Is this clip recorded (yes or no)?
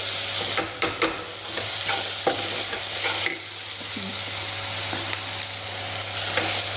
yes